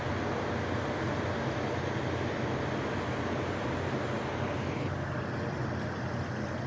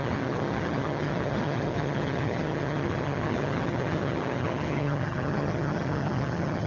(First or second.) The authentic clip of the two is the first